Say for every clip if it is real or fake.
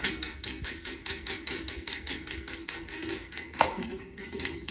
fake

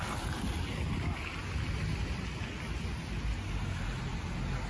real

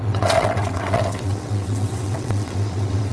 fake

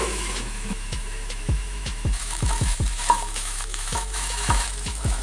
fake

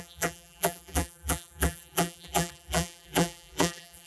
fake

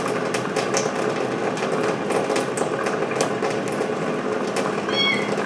real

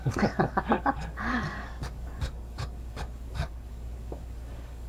fake